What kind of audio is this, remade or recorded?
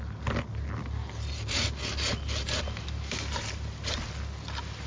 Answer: recorded